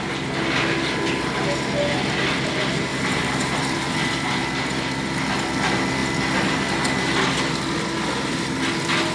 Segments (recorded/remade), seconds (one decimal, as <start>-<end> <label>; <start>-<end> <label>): 0.0-2.9 recorded; 2.9-3.9 remade; 3.9-9.1 recorded